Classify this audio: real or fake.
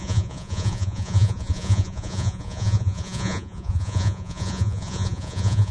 fake